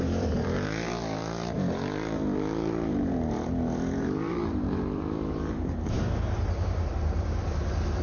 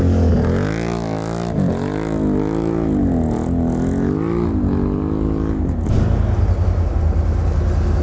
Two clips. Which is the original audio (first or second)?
second